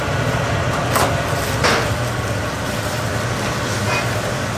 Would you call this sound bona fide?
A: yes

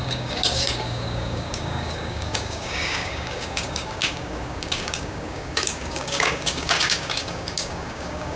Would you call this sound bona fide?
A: no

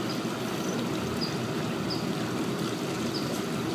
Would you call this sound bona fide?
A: yes